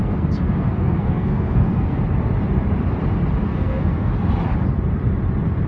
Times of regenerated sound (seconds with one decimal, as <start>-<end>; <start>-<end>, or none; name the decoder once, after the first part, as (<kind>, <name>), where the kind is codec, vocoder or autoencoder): 0.0-2.0 (codec, SNAC); 3.5-4.1